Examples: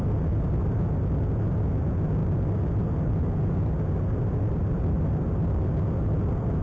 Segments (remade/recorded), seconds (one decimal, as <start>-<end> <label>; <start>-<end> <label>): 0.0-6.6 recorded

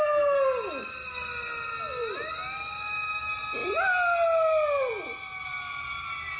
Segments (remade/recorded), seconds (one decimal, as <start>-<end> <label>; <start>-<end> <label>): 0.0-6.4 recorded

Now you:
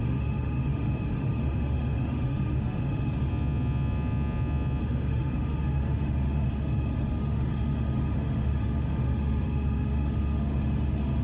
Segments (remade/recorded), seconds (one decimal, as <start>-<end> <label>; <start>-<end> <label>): 0.0-3.3 remade; 3.3-4.8 recorded; 4.8-11.2 remade